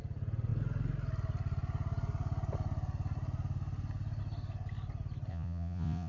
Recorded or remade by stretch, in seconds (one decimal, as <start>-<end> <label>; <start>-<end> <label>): 0.0-5.3 recorded; 5.3-6.1 remade

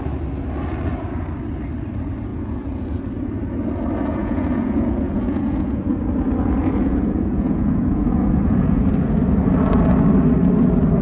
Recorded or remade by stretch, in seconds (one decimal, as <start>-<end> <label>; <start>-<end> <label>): 0.0-2.3 recorded; 2.3-3.0 remade; 3.0-4.1 recorded; 4.1-6.0 remade; 6.0-6.6 recorded; 6.6-8.9 remade; 8.9-11.0 recorded

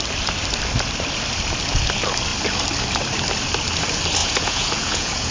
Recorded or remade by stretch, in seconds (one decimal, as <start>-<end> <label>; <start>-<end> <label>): 0.0-4.2 recorded; 4.2-5.3 remade

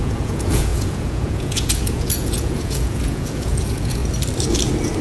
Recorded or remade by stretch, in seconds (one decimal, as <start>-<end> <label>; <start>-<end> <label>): 0.0-4.0 remade; 4.0-5.0 recorded

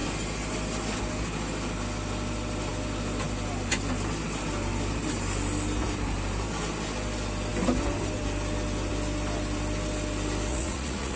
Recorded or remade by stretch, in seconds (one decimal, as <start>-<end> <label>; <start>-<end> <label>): 0.0-10.5 recorded; 10.5-11.2 remade

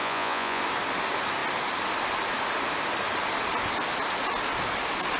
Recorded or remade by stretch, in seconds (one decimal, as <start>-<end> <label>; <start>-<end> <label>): 0.0-0.6 remade; 0.6-5.2 recorded

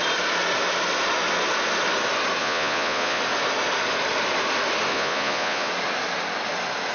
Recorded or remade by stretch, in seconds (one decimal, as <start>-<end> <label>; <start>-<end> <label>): 0.0-2.4 recorded; 2.4-3.2 remade; 3.2-4.9 recorded; 4.9-5.7 remade; 5.7-6.9 recorded

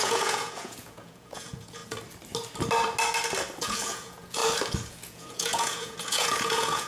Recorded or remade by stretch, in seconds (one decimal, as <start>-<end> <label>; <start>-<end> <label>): 0.0-1.8 remade; 1.8-3.6 recorded; 3.6-4.4 remade; 4.4-4.9 recorded; 4.9-6.9 remade